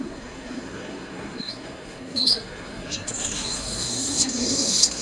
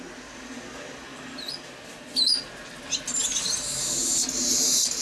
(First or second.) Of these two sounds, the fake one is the first